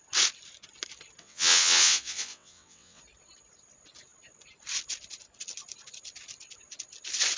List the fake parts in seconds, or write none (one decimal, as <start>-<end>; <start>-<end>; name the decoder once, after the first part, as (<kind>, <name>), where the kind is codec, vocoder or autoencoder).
1.2-3.0 (vocoder, WaveNeXt)